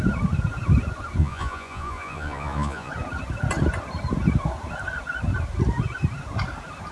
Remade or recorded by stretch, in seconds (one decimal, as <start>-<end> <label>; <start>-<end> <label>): 0.0-1.2 recorded; 1.2-2.9 remade; 2.9-6.9 recorded